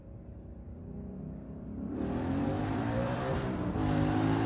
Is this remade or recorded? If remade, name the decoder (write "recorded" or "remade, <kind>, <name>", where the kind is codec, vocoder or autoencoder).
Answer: remade, vocoder, BigVGAN v2